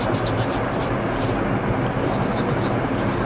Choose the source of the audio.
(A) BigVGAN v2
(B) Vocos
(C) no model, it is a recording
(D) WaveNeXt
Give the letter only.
C